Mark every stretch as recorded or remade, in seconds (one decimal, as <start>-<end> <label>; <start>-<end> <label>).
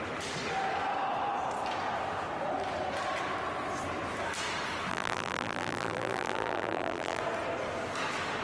0.0-4.9 recorded; 4.9-7.2 remade; 7.2-8.4 recorded